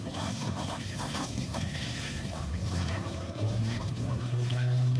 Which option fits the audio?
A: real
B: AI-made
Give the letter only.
B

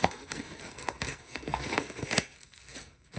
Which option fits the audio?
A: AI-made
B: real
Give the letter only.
A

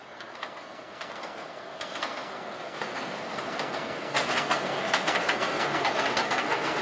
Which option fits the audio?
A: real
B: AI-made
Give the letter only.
B